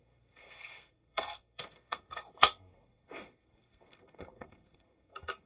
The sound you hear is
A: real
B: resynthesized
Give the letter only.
B